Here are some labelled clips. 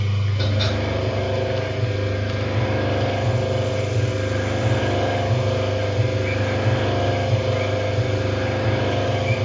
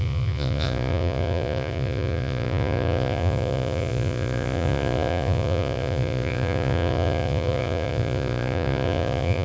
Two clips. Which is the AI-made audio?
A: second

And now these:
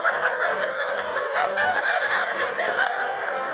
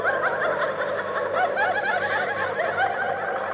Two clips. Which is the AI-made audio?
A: first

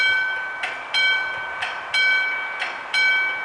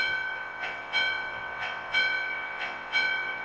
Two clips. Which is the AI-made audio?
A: second